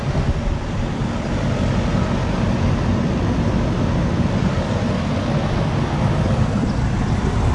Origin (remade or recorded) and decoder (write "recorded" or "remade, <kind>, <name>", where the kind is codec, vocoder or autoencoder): recorded